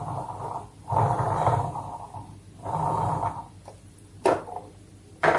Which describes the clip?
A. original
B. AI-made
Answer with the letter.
A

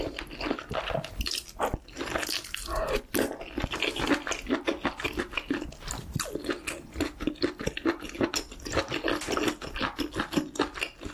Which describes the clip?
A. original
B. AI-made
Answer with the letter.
A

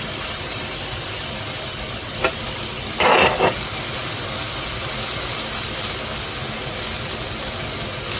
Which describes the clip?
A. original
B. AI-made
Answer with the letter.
A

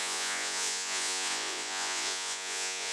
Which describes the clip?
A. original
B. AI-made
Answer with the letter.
B